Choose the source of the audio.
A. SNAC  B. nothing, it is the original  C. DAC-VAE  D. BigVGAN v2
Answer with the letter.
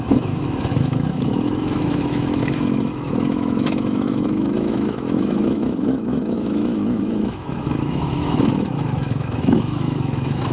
C